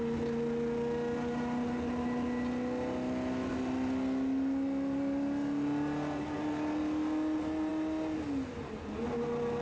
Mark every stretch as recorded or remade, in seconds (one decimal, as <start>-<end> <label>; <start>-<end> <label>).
0.0-9.6 recorded